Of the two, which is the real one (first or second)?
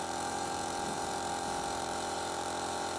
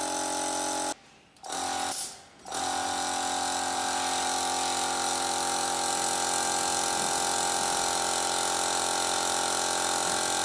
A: second